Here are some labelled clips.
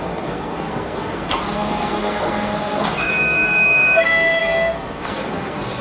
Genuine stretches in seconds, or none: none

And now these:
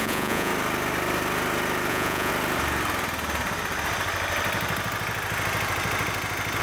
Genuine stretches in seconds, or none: 0.5-1.9; 2.3-6.6

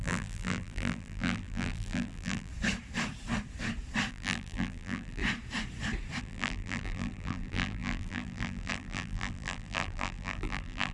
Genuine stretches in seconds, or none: 2.5-4.1; 5.2-6.2

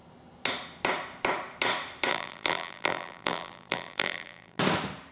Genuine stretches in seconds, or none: 0.0-2.1; 4.6-5.1